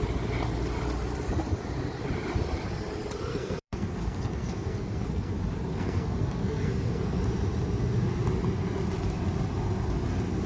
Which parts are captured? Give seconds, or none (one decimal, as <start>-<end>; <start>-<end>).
0.0-3.3; 5.3-5.7; 7.2-10.5